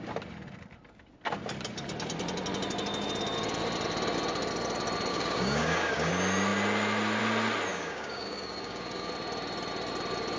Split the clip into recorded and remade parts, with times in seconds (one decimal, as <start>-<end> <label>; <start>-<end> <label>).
0.0-5.1 recorded; 5.1-6.1 remade; 6.1-7.7 recorded; 7.7-9.1 remade; 9.1-10.4 recorded